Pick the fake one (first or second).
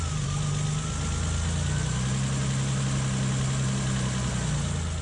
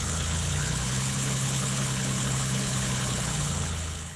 second